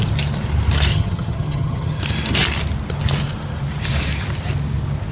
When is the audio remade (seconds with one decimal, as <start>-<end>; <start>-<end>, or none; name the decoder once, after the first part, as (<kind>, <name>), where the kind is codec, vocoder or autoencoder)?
0.9-2.0 (vocoder, HiFi-GAN)